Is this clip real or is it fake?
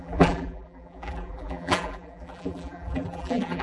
fake